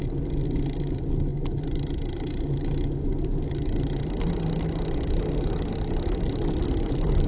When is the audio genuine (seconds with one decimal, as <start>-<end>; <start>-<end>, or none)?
1.3-5.7